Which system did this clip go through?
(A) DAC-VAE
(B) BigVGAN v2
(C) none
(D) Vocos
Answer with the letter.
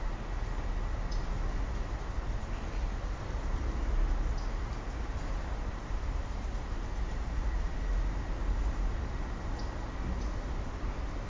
C